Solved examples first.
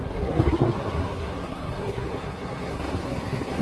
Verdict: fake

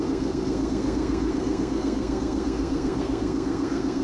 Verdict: fake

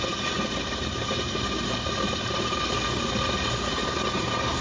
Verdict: real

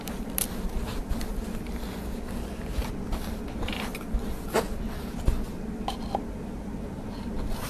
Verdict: real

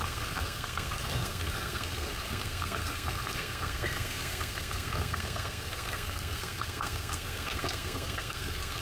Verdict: fake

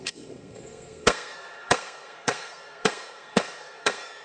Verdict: fake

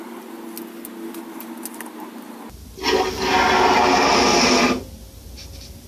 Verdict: real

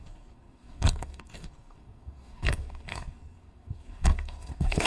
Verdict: fake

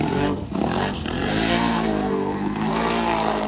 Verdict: fake